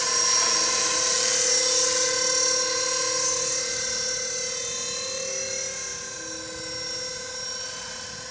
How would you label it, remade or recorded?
recorded